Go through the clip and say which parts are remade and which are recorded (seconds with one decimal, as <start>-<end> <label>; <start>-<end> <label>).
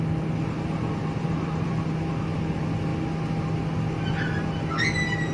0.0-1.0 recorded; 1.0-1.7 remade; 1.7-5.3 recorded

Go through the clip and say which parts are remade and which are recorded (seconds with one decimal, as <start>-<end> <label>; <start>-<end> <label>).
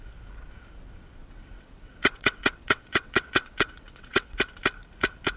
0.0-1.2 recorded; 1.2-4.4 remade; 4.4-5.4 recorded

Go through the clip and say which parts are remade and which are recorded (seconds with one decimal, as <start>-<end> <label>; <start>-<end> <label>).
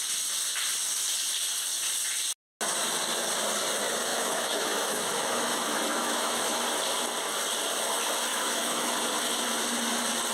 0.0-4.1 recorded; 4.1-6.6 remade; 6.6-8.3 recorded; 8.3-9.0 remade; 9.0-10.3 recorded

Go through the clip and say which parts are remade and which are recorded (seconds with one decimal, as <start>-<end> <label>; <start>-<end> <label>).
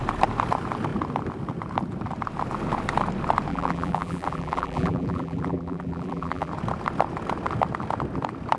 0.0-3.5 recorded; 3.5-6.5 remade; 6.5-8.6 recorded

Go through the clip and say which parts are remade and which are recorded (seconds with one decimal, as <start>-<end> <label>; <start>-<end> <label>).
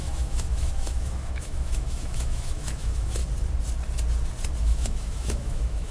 0.0-3.2 remade; 3.2-4.6 recorded; 4.6-5.9 remade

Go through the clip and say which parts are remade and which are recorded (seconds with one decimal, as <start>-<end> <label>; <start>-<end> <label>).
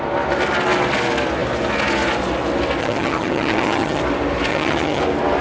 0.0-2.8 recorded; 2.8-4.0 remade; 4.0-4.5 recorded; 4.5-5.0 remade; 5.0-5.4 recorded